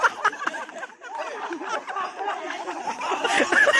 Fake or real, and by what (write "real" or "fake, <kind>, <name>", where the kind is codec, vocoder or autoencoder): real